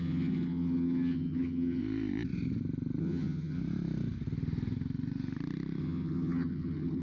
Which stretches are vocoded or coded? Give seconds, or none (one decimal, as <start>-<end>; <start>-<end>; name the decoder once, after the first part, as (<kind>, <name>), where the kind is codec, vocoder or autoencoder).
0.0-1.8 (vocoder, HiFi-GAN); 3.0-3.6; 5.8-7.0